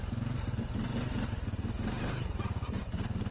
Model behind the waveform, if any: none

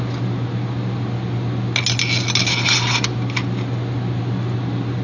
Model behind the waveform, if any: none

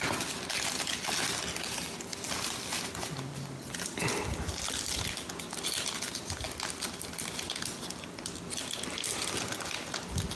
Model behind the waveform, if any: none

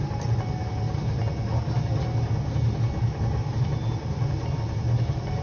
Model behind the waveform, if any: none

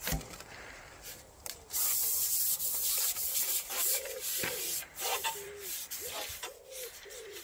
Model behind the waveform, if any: vocoder, BigVGAN v2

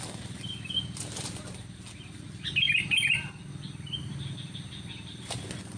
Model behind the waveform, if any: none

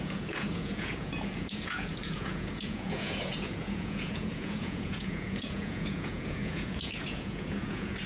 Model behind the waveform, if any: vocoder, Vocos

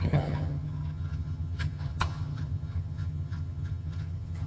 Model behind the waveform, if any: vocoder, HiFi-GAN